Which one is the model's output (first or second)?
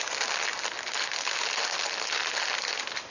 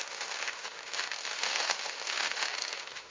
second